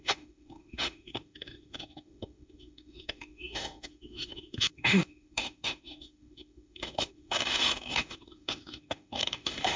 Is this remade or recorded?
remade